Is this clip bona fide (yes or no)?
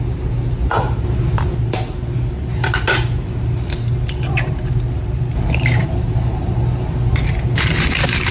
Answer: no